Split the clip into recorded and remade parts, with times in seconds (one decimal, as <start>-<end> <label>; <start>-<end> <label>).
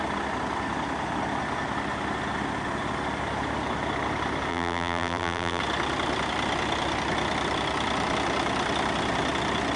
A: 0.0-4.5 recorded; 4.5-5.6 remade; 5.6-9.8 recorded